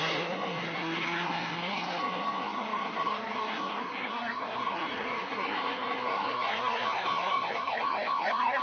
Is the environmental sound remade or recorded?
remade